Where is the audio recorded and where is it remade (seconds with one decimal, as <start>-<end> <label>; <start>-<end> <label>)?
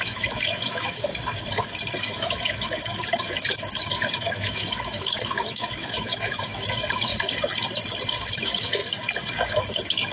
0.0-1.1 remade; 1.1-2.0 recorded; 2.0-7.1 remade; 7.1-8.4 recorded; 8.4-8.8 remade; 8.8-9.5 recorded; 9.5-10.1 remade